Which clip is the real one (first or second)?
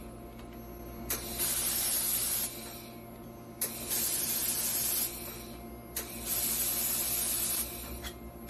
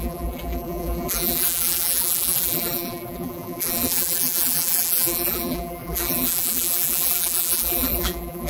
first